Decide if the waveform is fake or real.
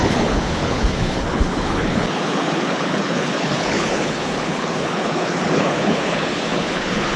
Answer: fake